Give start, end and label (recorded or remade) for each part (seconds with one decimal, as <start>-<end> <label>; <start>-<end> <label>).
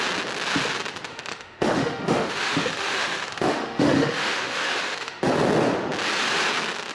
0.0-1.1 recorded; 1.1-5.2 remade; 5.2-6.9 recorded